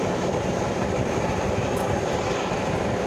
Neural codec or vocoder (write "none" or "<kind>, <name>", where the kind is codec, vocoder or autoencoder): vocoder, BigVGAN v2